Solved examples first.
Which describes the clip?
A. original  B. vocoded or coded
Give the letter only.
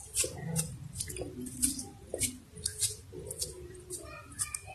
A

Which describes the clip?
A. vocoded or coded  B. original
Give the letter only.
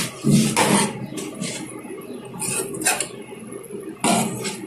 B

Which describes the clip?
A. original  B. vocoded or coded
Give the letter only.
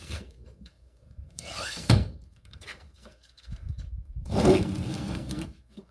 B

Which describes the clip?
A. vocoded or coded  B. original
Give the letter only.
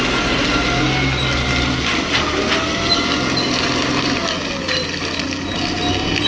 B